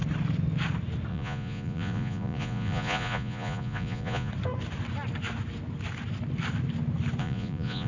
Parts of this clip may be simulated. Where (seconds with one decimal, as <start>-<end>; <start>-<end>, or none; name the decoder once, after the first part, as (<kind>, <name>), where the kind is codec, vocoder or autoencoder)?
1.1-4.3 (vocoder, Vocos); 7.2-7.9